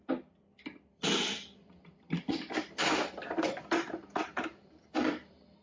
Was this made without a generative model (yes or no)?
no